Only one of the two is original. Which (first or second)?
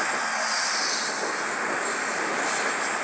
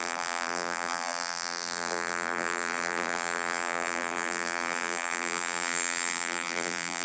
first